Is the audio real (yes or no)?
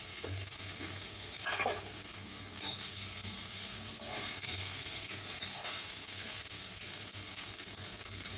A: no